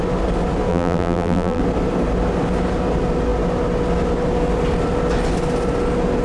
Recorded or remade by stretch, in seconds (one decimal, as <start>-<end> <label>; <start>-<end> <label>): 0.0-0.7 recorded; 0.7-1.6 remade; 1.6-6.2 recorded